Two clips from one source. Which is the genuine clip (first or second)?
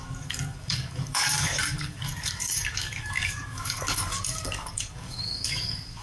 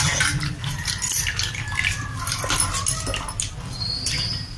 second